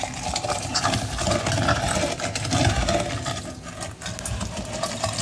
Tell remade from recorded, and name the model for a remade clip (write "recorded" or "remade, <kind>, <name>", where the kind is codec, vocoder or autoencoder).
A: recorded